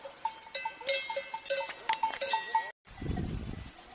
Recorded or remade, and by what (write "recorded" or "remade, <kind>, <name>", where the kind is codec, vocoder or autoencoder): recorded